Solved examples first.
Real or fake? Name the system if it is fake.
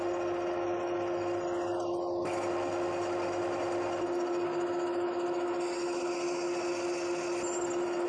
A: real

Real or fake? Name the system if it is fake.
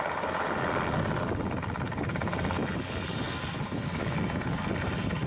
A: real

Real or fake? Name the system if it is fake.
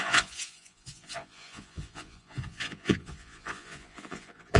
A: fake, vocoder, Vocos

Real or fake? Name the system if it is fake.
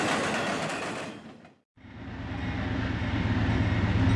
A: real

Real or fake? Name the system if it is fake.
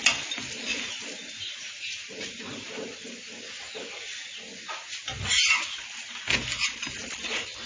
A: real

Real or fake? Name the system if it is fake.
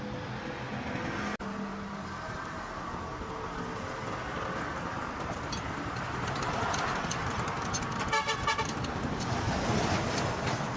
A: real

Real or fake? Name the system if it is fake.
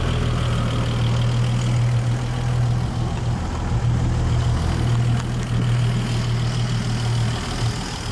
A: real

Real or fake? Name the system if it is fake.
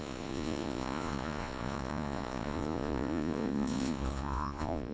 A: fake, vocoder, Vocos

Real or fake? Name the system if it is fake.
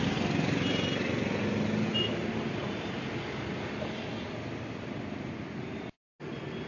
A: real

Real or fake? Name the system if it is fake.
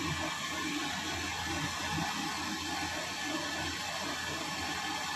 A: real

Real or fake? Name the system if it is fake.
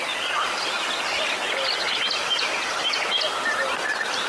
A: real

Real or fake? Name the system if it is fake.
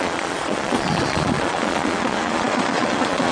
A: fake, vocoder, Vocos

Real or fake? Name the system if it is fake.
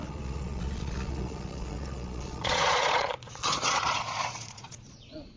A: fake, vocoder, Vocos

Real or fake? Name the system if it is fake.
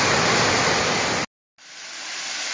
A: real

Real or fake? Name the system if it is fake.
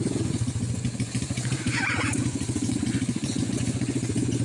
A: fake, vocoder, Vocos